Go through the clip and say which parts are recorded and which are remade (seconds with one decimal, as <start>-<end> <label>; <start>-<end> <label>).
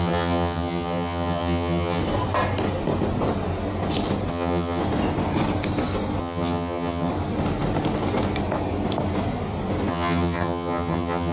0.0-2.0 remade; 2.0-4.3 recorded; 4.3-4.8 remade; 4.8-6.2 recorded; 6.2-7.1 remade; 7.1-9.9 recorded; 9.9-11.3 remade